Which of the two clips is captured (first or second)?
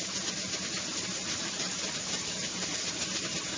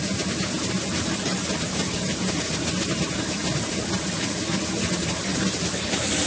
second